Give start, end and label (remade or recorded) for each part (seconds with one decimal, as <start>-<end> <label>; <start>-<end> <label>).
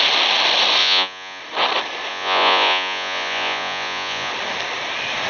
0.0-0.8 recorded; 0.8-1.4 remade; 1.4-2.1 recorded; 2.1-4.3 remade; 4.3-5.3 recorded